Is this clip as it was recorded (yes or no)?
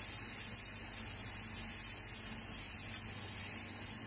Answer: yes